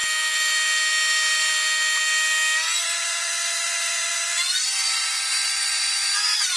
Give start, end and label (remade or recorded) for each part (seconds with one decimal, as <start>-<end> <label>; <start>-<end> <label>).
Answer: 0.0-2.8 recorded; 2.8-6.6 remade